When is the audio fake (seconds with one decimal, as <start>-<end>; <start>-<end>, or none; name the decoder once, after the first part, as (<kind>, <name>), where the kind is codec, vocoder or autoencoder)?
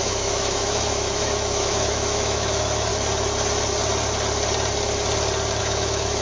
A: 0.0-2.9 (autoencoder, DAC-VAE); 5.6-6.2